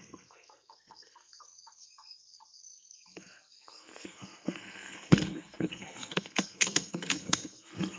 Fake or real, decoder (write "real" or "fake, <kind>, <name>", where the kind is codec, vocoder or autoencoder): fake, codec, SNAC